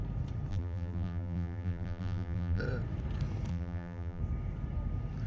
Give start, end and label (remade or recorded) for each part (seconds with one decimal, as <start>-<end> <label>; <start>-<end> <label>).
0.0-0.5 recorded; 0.5-2.6 remade; 2.6-3.5 recorded; 3.5-4.2 remade; 4.2-5.3 recorded